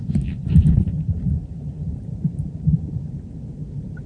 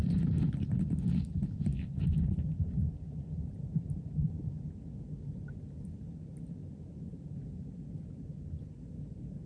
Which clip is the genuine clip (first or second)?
second